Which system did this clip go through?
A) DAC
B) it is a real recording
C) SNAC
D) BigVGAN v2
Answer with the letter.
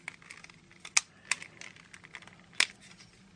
B